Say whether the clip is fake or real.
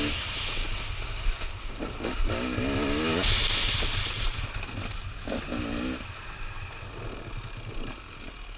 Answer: real